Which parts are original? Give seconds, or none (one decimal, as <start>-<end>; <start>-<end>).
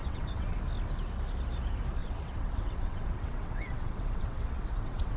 0.6-2.0